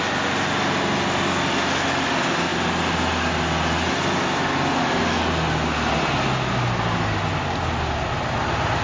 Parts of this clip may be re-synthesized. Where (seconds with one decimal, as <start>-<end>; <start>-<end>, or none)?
none